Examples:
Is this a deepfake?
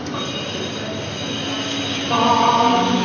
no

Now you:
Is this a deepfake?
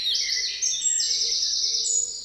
no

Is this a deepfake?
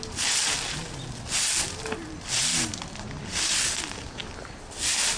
no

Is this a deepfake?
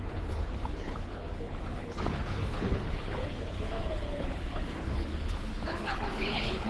yes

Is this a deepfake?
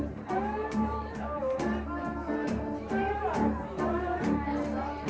yes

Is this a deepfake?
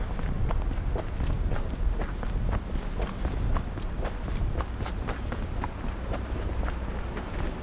no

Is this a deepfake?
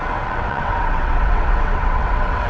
yes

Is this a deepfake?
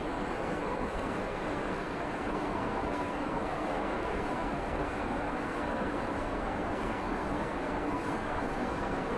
yes